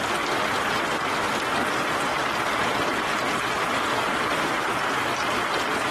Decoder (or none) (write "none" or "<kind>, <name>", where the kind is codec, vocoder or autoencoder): none